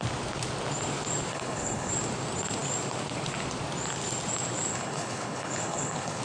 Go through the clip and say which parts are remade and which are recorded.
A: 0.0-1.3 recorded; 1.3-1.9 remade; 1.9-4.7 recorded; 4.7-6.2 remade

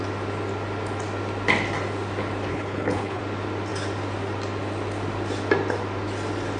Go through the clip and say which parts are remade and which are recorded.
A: 0.0-2.5 recorded; 2.5-3.2 remade; 3.2-6.6 recorded

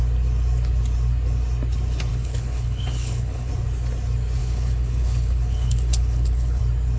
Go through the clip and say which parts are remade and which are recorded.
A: 0.0-2.1 recorded; 2.1-3.5 remade; 3.5-4.4 recorded; 4.4-6.6 remade; 6.6-7.0 recorded

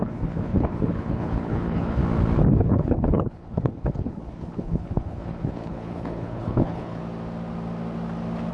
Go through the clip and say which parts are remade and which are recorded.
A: 0.0-2.0 remade; 2.0-2.5 recorded; 2.5-7.0 remade; 7.0-8.5 recorded